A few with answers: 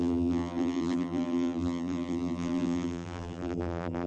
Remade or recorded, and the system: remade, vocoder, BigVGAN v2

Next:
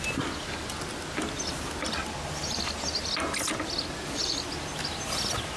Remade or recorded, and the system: recorded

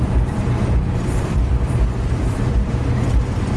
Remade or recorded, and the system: remade, vocoder, BigVGAN v2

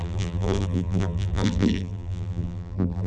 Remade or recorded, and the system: remade, vocoder, BigVGAN v2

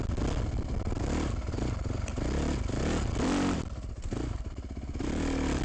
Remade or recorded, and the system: recorded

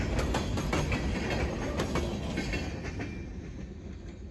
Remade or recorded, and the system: recorded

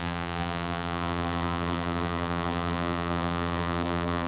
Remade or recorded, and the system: remade, vocoder, BigVGAN v2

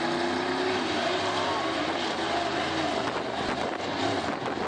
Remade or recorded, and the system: recorded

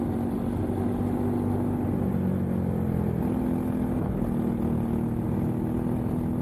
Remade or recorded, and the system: recorded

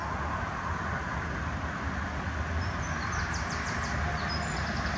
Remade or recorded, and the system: recorded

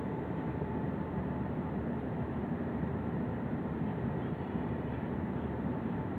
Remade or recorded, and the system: remade, vocoder, BigVGAN v2